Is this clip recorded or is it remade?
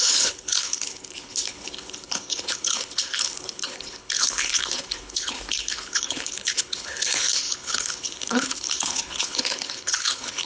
remade